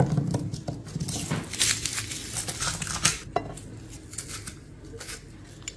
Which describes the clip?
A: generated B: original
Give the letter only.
B